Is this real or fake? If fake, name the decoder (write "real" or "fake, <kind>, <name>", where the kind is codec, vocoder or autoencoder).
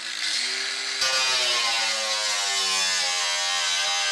real